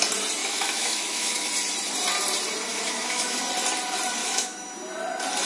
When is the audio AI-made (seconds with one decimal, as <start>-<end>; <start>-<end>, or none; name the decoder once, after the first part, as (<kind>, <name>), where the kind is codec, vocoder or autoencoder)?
0.4-1.5 (autoencoder, DAC-VAE); 2.7-3.4; 4.2-4.7